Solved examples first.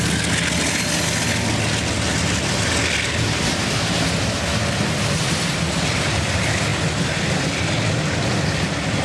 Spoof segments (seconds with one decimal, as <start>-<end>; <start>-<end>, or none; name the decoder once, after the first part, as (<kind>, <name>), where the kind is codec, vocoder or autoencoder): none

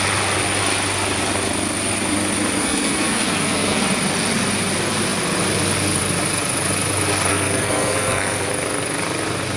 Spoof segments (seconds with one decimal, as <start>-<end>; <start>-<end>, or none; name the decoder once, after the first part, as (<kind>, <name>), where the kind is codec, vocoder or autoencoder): 2.6-3.8 (codec, SNAC); 7.3-8.5

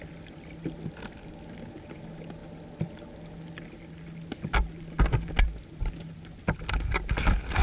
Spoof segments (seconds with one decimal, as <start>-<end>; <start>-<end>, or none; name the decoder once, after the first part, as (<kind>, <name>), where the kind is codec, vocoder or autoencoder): none

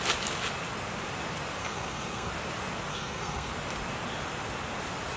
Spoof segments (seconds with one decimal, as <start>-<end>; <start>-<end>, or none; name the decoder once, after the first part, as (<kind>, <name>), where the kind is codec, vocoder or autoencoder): 1.6-2.3 (codec, SNAC); 2.9-3.5